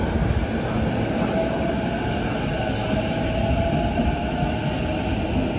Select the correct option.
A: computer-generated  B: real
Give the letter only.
B